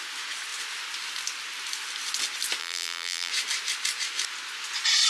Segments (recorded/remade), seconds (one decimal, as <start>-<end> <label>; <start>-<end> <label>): 0.0-2.6 recorded; 2.6-3.3 remade; 3.3-5.1 recorded